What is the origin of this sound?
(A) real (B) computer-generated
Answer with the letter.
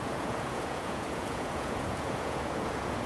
B